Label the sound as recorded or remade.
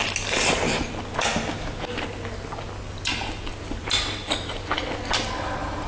recorded